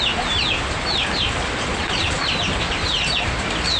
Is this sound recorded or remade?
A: recorded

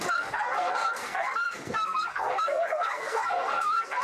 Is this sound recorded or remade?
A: remade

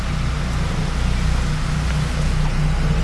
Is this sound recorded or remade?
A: recorded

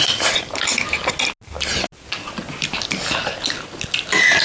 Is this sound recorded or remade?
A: recorded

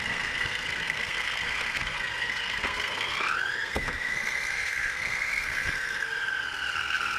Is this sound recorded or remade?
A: remade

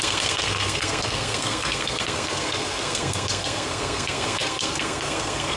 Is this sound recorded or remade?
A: remade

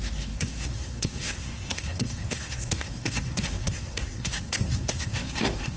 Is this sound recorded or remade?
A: remade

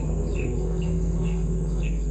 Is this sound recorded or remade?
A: remade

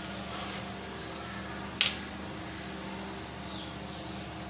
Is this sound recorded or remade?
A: recorded